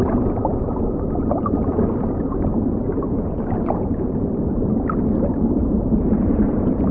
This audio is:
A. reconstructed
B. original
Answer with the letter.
A